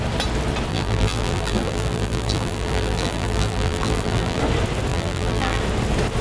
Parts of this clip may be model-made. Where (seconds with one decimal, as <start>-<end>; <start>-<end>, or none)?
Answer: 0.7-4.4; 4.9-5.6